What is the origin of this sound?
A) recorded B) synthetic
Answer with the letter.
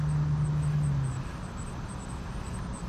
A